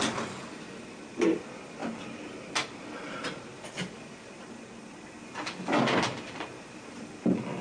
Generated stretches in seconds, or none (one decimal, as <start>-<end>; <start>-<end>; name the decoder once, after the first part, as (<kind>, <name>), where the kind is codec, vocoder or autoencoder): none

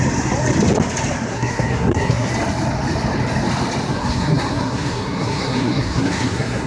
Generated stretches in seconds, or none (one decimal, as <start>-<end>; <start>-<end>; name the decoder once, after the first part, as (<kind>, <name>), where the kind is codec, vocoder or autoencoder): 1.3-2.3 (codec, SNAC); 3.9-6.7

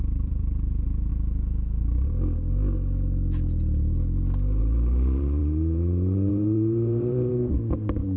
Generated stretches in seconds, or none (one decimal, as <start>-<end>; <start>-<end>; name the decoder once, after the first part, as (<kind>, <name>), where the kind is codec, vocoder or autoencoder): 0.0-1.1 (vocoder, BigVGAN v2); 4.6-8.2